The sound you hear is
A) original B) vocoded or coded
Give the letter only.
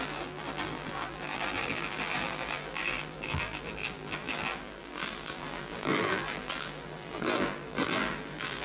B